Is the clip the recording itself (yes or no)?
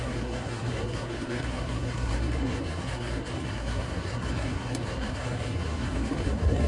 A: no